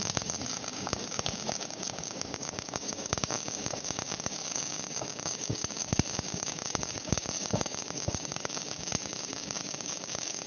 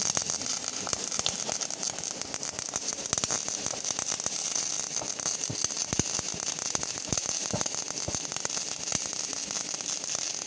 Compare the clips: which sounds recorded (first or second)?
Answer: second